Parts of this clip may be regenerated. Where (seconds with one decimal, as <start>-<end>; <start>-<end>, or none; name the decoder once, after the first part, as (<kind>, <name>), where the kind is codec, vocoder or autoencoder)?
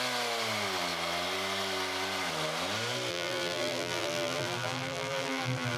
3.1-5.8 (vocoder, BigVGAN v2)